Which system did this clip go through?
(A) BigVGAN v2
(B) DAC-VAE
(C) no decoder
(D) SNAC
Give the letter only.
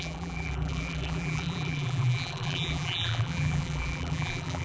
A